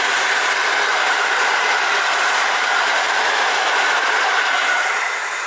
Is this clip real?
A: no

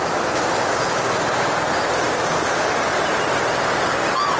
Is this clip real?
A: yes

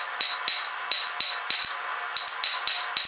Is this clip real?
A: yes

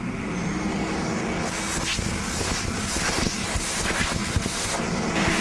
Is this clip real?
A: yes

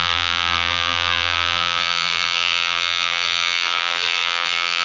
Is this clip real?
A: no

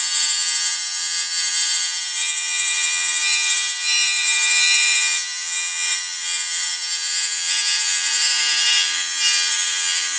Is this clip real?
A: no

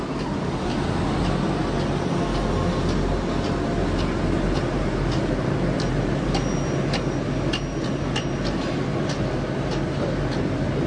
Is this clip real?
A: yes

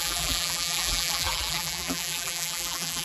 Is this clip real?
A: no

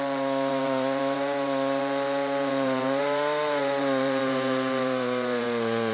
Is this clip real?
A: no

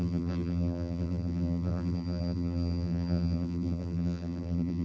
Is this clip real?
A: no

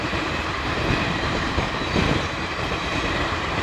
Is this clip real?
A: no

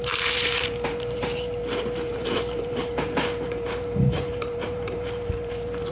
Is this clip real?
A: no